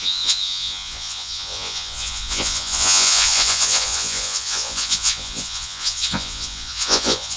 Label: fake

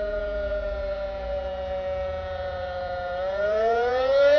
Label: fake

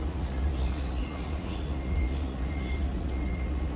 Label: fake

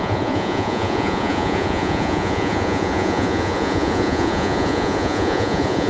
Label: fake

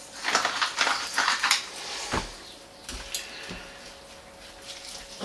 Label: real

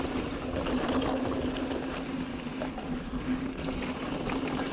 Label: real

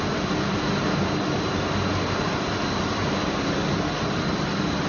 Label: real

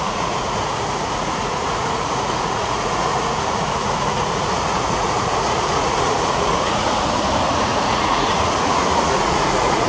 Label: fake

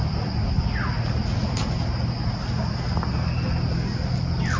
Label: real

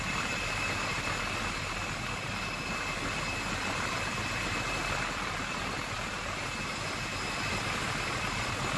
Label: real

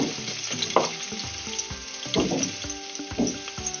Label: real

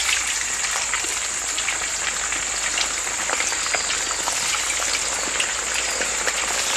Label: real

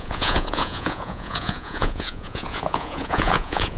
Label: fake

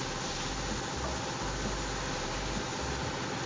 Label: real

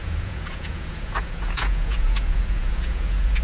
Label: fake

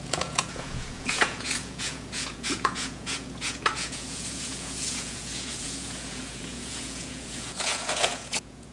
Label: fake